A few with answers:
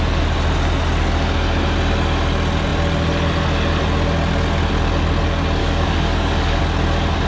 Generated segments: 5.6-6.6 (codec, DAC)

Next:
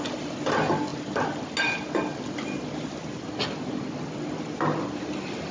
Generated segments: none

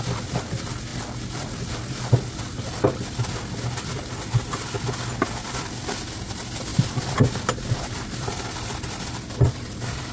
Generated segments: 0.9-2.4 (vocoder, BigVGAN v2); 6.7-8.4